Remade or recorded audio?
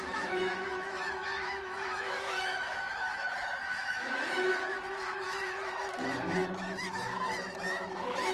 remade